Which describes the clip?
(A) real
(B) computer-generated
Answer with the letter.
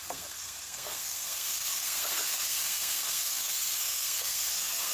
B